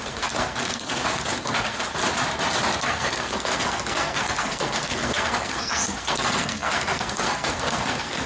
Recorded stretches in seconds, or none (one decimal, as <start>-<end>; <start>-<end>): 1.0-1.6; 2.0-2.8